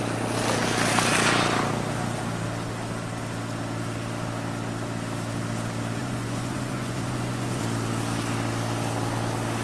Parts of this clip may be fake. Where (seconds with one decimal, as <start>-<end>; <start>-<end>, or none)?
6.0-7.6